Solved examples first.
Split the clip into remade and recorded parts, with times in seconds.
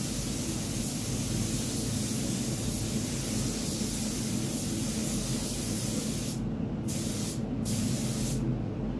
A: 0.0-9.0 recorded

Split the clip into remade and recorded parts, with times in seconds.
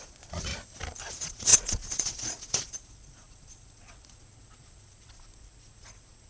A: 0.0-0.5 remade; 0.5-1.1 recorded; 1.1-6.3 remade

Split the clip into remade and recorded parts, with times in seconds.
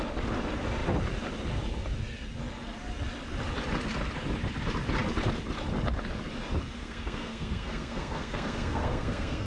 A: 0.0-6.8 recorded; 6.8-9.5 remade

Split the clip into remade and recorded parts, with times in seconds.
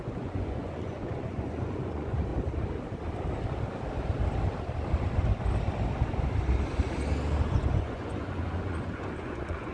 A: 0.0-2.3 remade; 2.3-7.5 recorded; 7.5-9.7 remade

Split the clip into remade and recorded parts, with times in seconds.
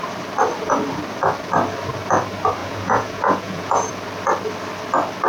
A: 0.0-2.6 recorded; 2.6-3.9 remade; 3.9-5.3 recorded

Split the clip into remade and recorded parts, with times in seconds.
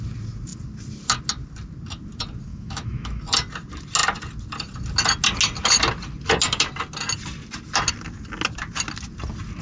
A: 0.0-2.5 recorded; 2.5-3.2 remade; 3.2-9.6 recorded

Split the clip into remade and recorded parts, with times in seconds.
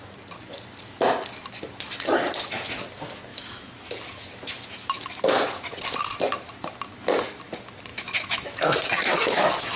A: 0.0-3.3 recorded; 3.3-5.1 remade; 5.1-7.9 recorded; 7.9-9.8 remade